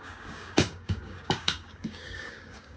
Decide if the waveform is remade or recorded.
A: remade